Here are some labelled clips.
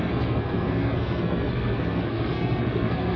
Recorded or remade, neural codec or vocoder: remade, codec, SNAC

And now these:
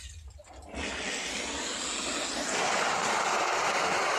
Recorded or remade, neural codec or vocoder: recorded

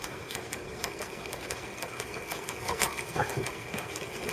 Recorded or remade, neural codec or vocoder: remade, codec, SNAC